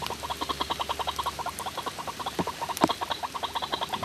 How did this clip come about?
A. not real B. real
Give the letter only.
B